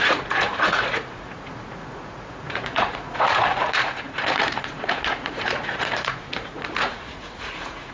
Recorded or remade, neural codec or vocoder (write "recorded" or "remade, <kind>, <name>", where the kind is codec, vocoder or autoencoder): remade, vocoder, Vocos